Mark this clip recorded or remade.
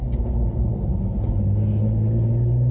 recorded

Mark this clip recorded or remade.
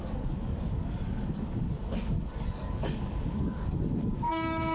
remade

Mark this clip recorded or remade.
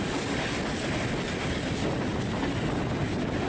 recorded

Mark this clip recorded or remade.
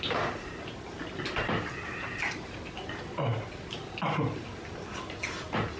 recorded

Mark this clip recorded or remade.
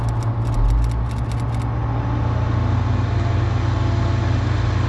recorded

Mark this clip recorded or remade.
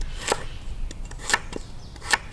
recorded